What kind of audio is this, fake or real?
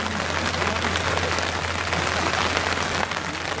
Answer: real